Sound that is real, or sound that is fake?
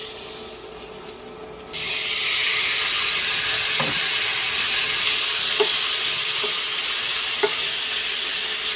real